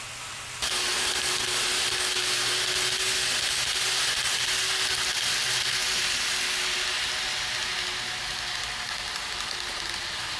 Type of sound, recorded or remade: recorded